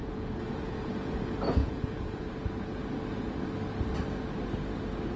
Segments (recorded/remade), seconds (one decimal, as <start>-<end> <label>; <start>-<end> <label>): 0.0-1.2 remade; 1.2-1.6 recorded; 1.6-2.2 remade; 2.2-5.2 recorded